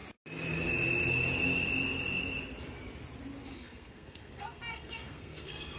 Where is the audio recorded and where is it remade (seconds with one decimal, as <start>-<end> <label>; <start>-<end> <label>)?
0.0-3.5 recorded; 3.5-5.8 remade